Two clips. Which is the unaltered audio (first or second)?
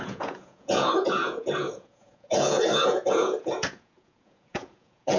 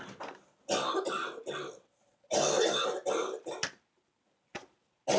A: second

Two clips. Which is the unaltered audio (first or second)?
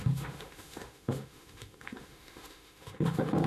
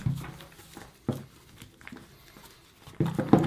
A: second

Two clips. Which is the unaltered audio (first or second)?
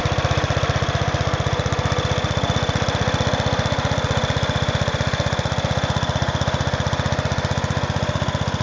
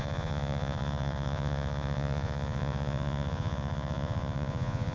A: first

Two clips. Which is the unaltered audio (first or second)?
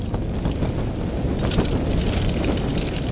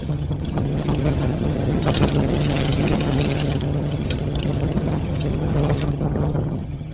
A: first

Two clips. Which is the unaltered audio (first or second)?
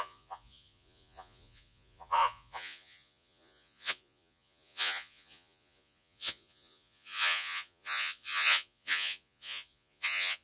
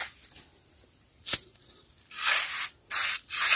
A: second